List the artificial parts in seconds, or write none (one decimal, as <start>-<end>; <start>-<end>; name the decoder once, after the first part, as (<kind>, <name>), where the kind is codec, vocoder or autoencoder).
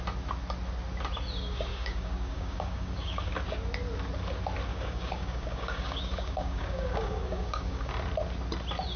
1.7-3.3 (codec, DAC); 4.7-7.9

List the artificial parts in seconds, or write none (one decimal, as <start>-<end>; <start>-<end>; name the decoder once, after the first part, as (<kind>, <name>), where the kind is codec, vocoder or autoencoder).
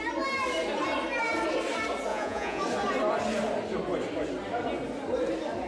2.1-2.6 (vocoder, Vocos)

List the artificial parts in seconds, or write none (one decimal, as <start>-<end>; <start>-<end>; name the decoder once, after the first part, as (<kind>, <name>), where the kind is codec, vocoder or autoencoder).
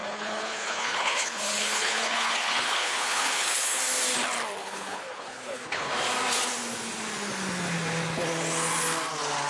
0.0-3.8 (codec, HILCodec); 4.6-5.9